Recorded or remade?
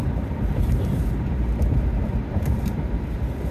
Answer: remade